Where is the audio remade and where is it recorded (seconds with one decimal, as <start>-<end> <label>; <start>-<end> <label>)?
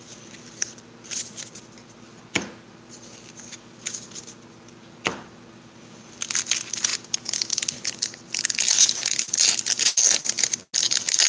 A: 0.0-11.3 recorded